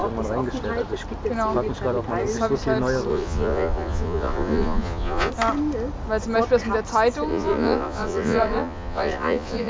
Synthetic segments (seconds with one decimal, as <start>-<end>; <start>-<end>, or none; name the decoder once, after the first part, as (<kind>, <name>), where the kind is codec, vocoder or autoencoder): 3.1-5.3 (vocoder, Vocos); 7.3-9.7